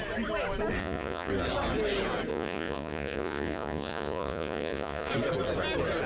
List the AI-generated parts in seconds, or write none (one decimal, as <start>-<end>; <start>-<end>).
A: 0.8-1.3; 2.3-5.1